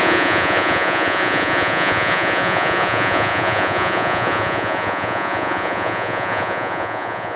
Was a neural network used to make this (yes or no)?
yes